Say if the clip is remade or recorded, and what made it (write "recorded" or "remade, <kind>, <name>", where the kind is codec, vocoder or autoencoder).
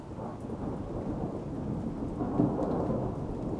recorded